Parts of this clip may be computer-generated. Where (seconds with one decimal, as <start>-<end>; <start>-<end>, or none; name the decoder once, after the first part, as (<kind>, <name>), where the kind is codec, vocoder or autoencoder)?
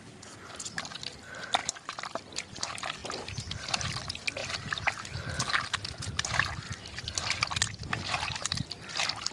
1.6-2.3 (vocoder, BigVGAN v2); 3.0-4.0